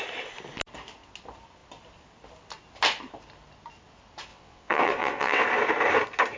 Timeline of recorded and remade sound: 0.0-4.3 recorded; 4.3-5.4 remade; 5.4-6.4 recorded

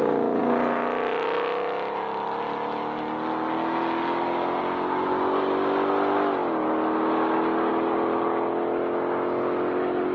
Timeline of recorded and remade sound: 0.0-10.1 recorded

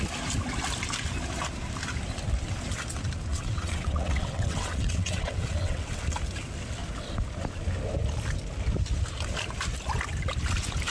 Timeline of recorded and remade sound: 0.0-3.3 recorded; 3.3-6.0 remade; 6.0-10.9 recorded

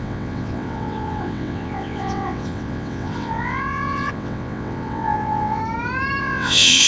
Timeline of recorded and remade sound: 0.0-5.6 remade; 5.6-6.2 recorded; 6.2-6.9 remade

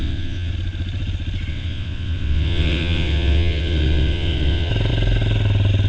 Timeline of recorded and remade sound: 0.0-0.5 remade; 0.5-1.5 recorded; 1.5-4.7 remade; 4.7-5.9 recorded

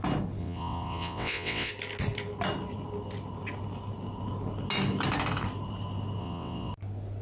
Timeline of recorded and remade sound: 0.0-0.4 recorded; 0.4-1.7 remade; 1.7-6.2 recorded; 6.2-6.7 remade; 6.7-7.2 recorded